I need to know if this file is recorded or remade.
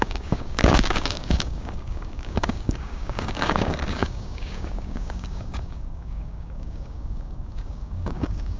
remade